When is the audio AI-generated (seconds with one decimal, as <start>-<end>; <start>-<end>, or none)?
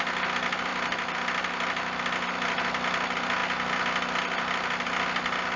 none